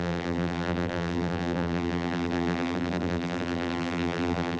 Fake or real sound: fake